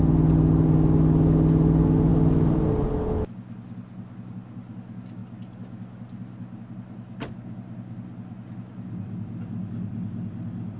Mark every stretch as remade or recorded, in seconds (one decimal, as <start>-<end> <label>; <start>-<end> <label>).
0.0-10.8 recorded